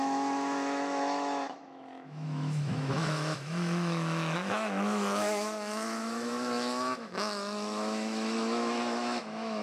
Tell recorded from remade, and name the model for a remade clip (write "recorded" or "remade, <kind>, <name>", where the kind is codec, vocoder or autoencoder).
remade, autoencoder, DAC-VAE